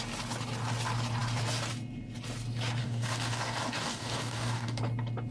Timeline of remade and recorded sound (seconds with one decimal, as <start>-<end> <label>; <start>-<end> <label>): 0.0-2.8 recorded; 2.8-4.8 remade; 4.8-5.3 recorded